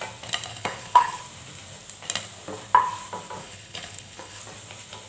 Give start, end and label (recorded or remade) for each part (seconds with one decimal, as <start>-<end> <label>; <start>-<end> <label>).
0.0-0.5 recorded; 0.5-1.2 remade; 1.2-3.4 recorded; 3.4-4.4 remade; 4.4-5.1 recorded